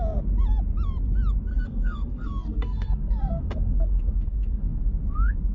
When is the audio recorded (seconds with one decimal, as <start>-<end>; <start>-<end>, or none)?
0.0-1.5; 4.8-5.5